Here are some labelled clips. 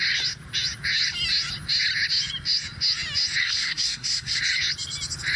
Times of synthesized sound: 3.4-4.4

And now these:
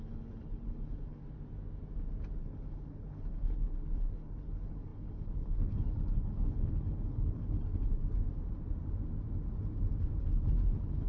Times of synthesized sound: 0.0-1.2; 2.4-8.0; 10.2-11.1

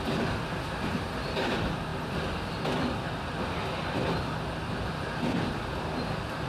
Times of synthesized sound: none

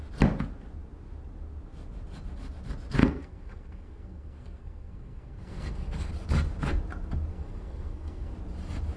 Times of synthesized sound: 3.0-6.1; 7.3-8.3

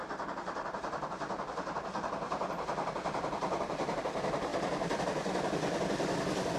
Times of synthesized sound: 0.0-4.0; 4.5-5.0